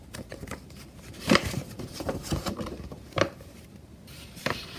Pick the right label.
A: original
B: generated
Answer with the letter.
B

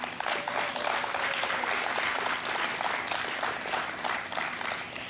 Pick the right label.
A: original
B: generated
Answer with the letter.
A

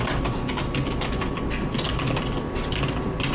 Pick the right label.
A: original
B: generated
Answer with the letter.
A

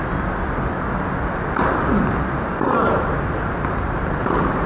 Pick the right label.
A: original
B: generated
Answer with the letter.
A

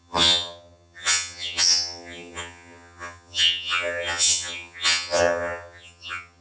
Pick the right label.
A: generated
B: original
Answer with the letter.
A